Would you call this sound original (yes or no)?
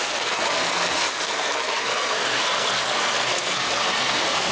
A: no